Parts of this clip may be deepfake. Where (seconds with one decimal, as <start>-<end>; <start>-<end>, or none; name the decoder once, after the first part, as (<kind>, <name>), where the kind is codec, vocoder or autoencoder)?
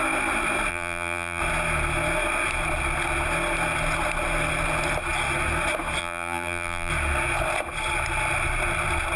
0.7-1.4 (vocoder, BigVGAN v2); 6.0-6.9